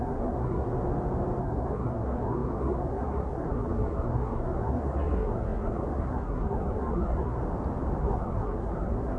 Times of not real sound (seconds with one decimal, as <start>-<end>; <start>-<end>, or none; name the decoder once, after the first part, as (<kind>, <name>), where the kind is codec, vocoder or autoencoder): 0.0-0.7 (codec, SNAC); 1.4-7.4; 8.0-9.2